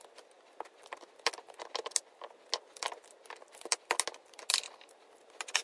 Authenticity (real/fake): real